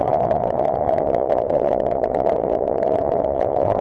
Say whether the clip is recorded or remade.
remade